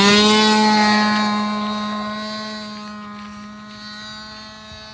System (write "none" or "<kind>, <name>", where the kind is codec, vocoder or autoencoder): none